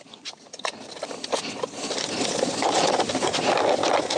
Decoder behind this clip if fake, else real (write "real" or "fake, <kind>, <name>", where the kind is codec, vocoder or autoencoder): real